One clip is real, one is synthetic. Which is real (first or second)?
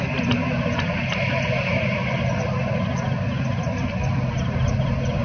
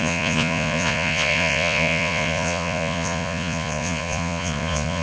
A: first